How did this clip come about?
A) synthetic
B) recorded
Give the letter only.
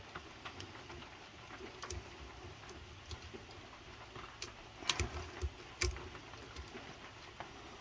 B